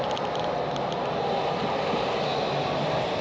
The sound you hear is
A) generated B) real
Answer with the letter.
B